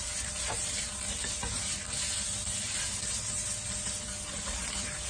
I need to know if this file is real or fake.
real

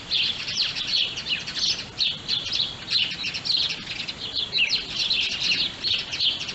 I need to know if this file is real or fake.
real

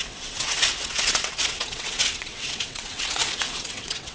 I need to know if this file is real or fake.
fake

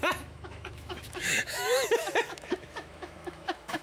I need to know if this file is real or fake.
fake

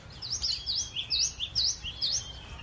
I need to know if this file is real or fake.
real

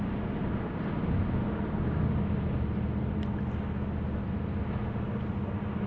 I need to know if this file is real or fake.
real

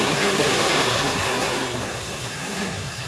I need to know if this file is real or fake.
fake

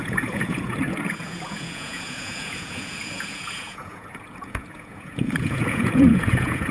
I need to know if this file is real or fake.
fake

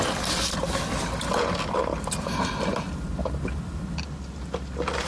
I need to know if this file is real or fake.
real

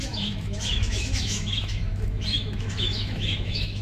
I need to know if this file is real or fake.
fake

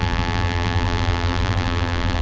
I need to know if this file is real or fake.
fake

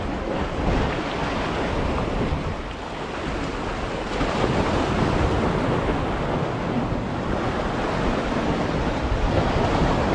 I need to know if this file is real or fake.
real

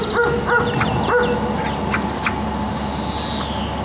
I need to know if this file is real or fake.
real